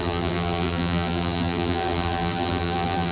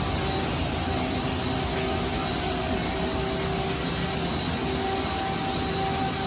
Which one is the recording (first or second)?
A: second